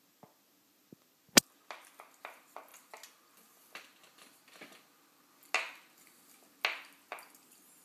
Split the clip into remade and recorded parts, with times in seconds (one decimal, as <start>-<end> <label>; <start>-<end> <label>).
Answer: 0.0-7.8 recorded